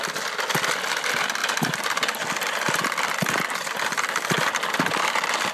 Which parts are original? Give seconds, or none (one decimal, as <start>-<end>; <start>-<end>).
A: 0.0-5.5